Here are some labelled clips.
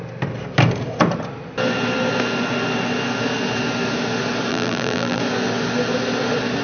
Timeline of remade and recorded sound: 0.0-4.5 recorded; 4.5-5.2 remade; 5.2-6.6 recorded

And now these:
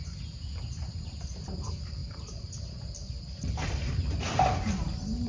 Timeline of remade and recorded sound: 0.0-5.3 recorded

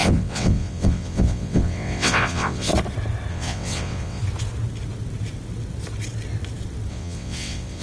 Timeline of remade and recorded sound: 0.0-2.7 remade; 2.7-3.3 recorded; 3.3-4.2 remade; 4.2-6.9 recorded; 6.9-7.8 remade

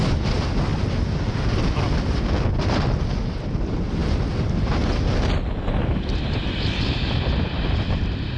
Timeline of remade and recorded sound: 0.0-0.7 remade; 0.7-1.6 recorded; 1.6-4.0 remade; 4.0-6.3 recorded; 6.3-8.4 remade

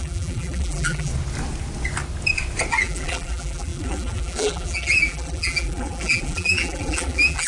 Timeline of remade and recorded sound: 0.0-1.1 remade; 1.1-2.7 recorded; 2.7-7.5 remade

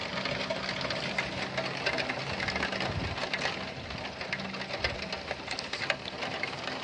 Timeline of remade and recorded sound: 0.0-6.8 recorded

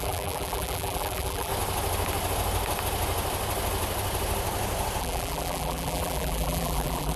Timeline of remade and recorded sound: 0.0-1.5 remade; 1.5-5.0 recorded; 5.0-7.2 remade

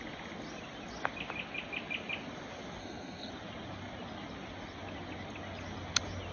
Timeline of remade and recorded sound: 0.0-2.8 recorded; 2.8-3.3 remade; 3.3-6.3 recorded